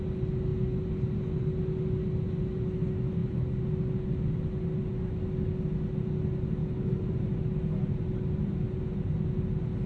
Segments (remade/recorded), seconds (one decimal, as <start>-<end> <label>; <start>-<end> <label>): 0.0-9.9 recorded